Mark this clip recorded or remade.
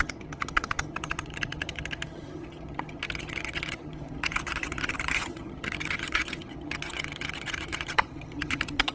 remade